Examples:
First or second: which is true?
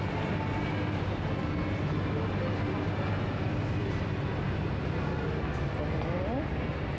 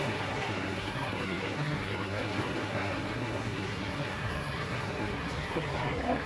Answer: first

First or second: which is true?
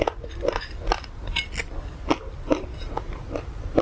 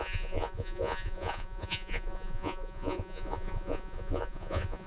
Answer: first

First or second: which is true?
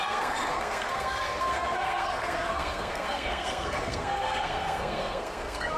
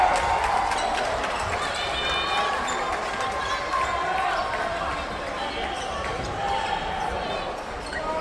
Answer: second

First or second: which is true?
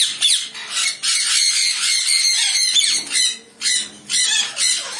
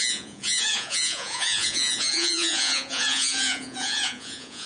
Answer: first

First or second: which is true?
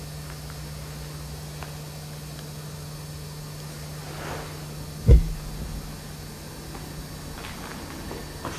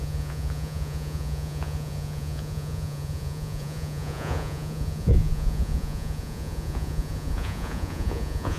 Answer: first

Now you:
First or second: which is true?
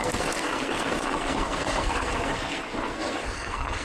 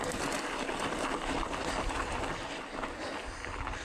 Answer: second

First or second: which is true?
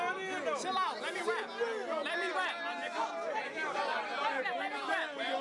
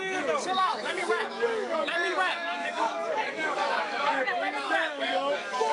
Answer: first